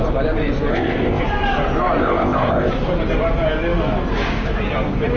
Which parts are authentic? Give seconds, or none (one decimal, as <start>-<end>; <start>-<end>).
0.0-0.7; 1.2-2.0; 2.7-5.2